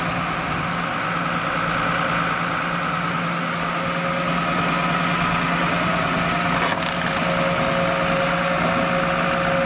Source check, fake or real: real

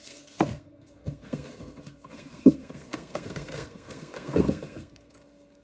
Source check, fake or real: fake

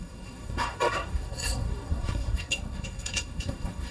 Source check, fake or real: fake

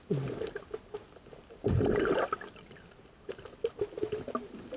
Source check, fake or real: real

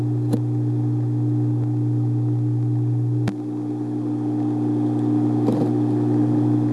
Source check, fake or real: real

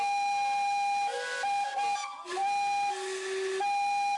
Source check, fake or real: real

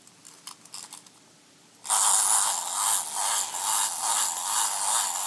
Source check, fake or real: real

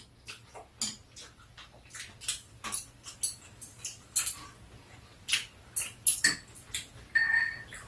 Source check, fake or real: real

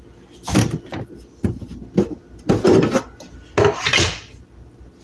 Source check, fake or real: real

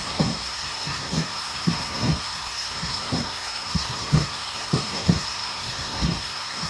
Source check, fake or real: fake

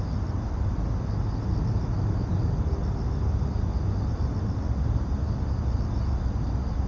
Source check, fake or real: real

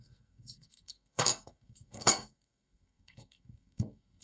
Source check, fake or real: fake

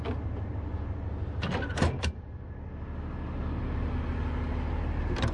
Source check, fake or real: real